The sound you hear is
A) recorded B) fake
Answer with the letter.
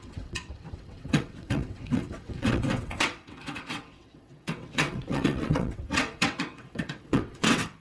B